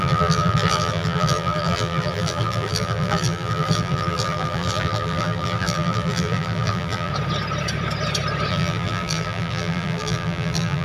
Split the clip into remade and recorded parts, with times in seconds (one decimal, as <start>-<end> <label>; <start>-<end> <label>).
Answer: 0.0-7.1 remade; 7.1-8.5 recorded; 8.5-10.8 remade